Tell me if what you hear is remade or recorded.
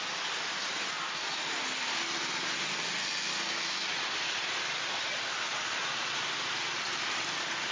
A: recorded